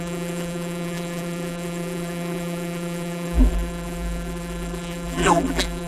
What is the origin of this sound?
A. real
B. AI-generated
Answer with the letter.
B